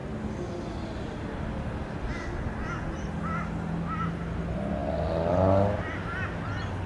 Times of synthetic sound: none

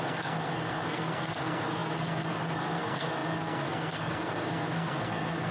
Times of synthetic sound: 0.0-5.5 (codec, SNAC)

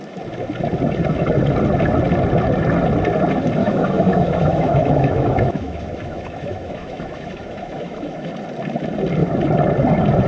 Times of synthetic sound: 3.6-8.3 (autoencoder, DAC-VAE)

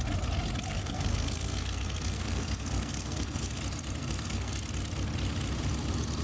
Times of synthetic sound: 0.7-3.6 (codec, SNAC); 4.0-4.6

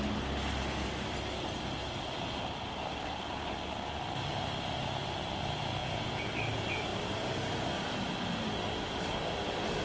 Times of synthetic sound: 5.8-6.3 (vocoder, Vocos)

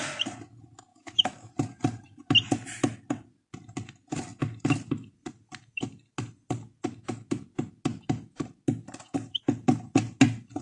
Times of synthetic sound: 0.9-1.5 (autoencoder, DAC-VAE)